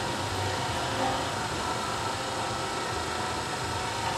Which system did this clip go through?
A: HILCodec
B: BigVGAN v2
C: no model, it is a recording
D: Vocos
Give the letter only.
C